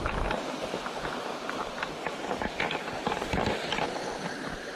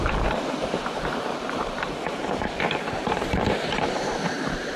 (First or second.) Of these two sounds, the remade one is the second